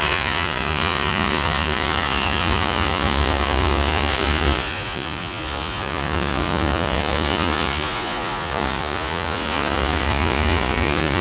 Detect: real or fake fake